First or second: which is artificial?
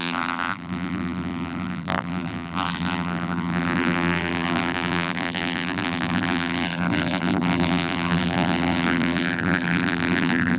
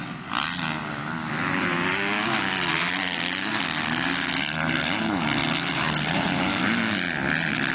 first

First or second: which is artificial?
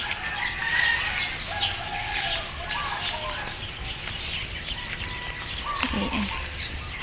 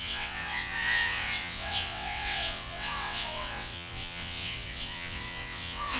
second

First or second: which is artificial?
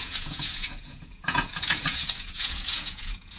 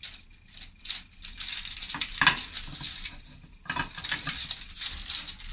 first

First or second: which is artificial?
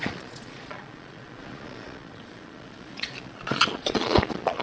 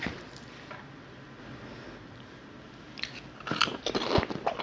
first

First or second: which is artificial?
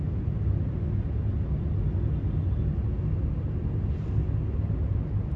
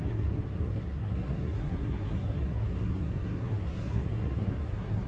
second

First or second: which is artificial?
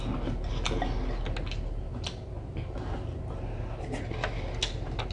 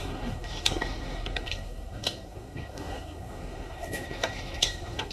second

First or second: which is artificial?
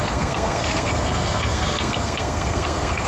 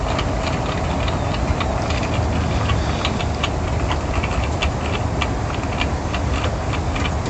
first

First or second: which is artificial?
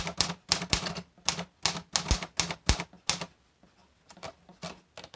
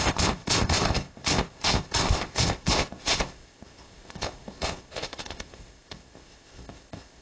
second